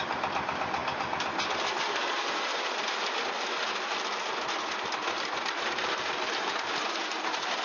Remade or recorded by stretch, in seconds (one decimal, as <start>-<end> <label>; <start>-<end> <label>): 0.0-7.6 recorded